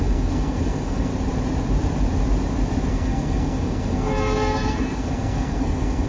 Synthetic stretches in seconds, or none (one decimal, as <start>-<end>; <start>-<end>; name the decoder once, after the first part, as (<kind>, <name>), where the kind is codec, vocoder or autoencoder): 0.0-1.1 (codec, SNAC); 2.9-6.1